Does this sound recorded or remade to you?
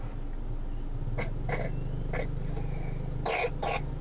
recorded